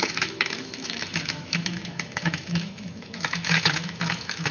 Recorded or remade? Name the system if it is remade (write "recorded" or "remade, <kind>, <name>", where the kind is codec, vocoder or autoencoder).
remade, autoencoder, DAC-VAE